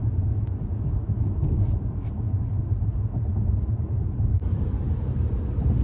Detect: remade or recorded recorded